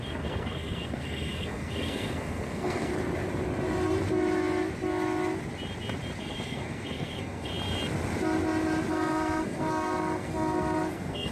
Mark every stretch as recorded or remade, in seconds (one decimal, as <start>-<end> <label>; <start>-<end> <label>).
0.0-2.9 remade; 2.9-6.2 recorded; 6.2-7.5 remade; 7.5-8.9 recorded; 8.9-11.3 remade